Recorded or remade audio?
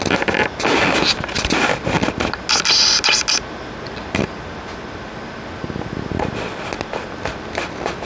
recorded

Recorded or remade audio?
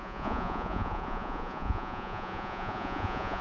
remade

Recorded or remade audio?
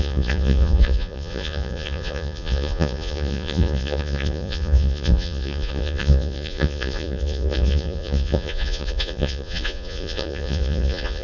remade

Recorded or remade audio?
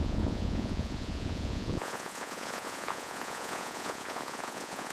remade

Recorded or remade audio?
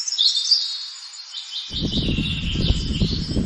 recorded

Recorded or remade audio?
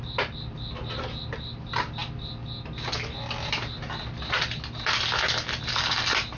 recorded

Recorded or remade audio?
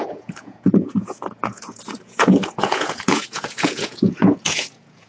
remade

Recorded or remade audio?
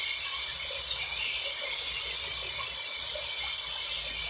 recorded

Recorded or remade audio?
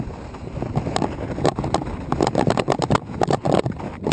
recorded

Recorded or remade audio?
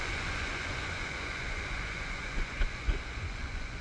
remade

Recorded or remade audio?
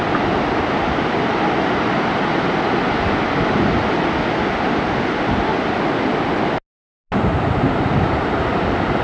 recorded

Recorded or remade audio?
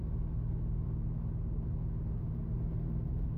recorded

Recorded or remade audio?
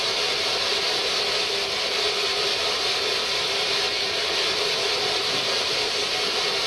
recorded